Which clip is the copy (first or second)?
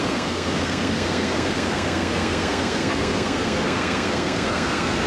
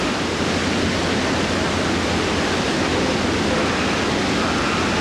first